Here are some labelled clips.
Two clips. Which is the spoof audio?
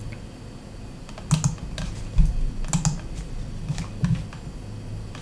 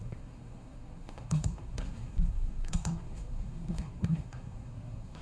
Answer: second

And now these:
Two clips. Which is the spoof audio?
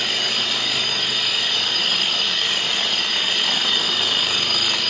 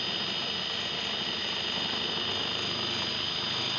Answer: first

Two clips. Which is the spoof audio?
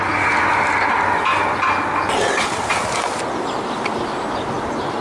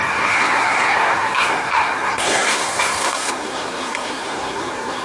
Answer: second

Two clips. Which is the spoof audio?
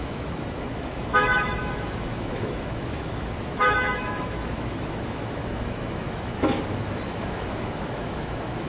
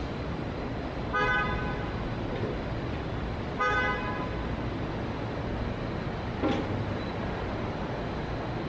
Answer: first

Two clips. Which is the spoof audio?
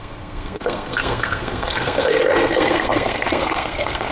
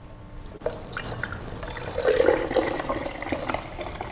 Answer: first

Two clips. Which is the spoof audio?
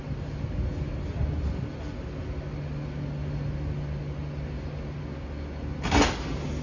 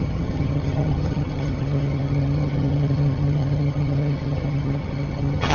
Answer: second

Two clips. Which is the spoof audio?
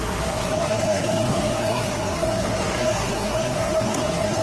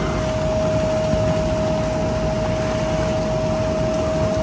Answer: first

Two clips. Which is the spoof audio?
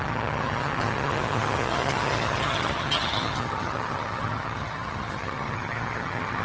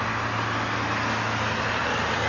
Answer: first